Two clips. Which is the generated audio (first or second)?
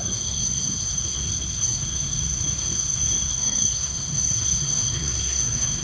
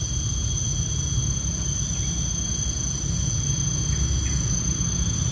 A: first